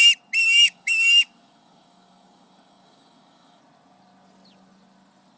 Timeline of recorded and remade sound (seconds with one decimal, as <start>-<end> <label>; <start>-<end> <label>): 0.0-0.4 recorded; 0.4-3.6 remade; 3.6-5.4 recorded